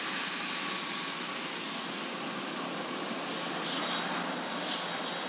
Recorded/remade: recorded